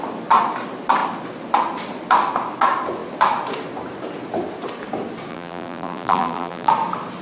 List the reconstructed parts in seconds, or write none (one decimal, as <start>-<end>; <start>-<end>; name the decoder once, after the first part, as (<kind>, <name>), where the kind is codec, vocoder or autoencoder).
5.3-6.7 (vocoder, BigVGAN v2)